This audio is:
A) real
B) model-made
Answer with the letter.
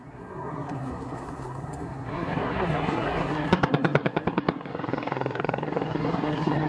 B